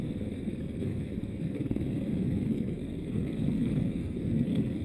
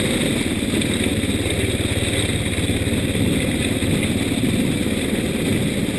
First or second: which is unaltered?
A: second